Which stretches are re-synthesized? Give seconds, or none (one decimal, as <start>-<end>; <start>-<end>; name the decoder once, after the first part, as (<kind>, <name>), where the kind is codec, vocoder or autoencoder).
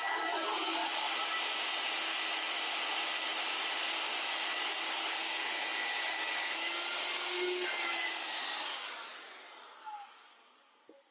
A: 0.0-0.8 (codec, DAC); 4.2-9.1; 9.8-11.1